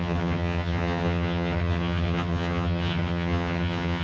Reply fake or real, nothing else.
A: fake